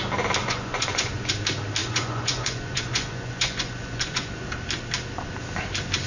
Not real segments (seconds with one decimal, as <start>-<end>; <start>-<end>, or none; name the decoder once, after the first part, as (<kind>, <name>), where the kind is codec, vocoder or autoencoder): 0.4-1.3 (vocoder, Vocos); 1.8-4.3